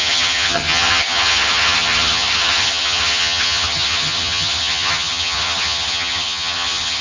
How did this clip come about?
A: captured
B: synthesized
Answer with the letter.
B